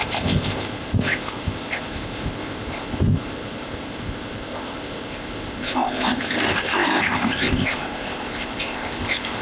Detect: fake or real fake